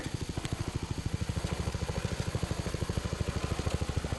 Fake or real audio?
fake